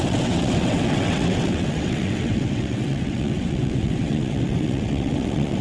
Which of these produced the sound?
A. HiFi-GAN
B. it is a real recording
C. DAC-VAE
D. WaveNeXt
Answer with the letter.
D